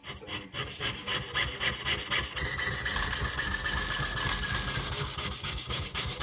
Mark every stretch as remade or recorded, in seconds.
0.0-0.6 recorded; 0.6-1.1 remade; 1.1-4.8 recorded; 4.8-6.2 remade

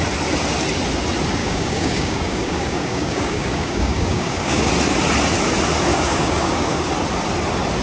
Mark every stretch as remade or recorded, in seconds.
0.0-1.4 recorded; 1.4-4.7 remade; 4.7-5.9 recorded; 5.9-6.9 remade; 6.9-7.8 recorded

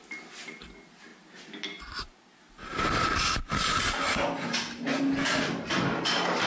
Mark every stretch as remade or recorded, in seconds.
0.0-6.5 recorded

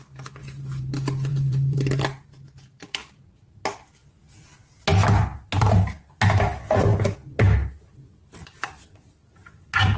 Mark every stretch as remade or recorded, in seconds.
0.0-0.4 recorded; 0.4-0.9 remade; 0.9-1.3 recorded; 1.3-3.2 remade; 3.2-10.0 recorded

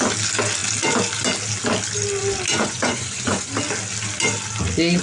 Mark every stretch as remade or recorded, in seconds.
0.0-2.5 recorded; 2.5-3.5 remade; 3.5-5.0 recorded

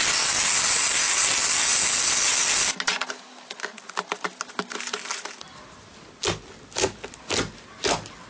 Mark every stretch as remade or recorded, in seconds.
0.0-8.3 recorded